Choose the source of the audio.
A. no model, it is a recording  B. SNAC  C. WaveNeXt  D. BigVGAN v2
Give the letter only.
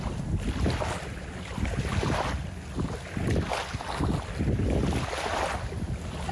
A